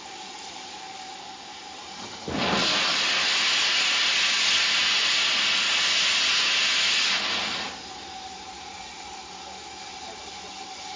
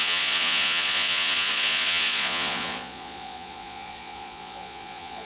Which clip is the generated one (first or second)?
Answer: second